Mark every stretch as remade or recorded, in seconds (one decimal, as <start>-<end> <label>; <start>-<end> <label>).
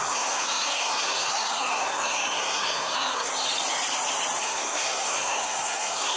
0.0-3.3 remade; 3.3-4.4 recorded; 4.4-6.2 remade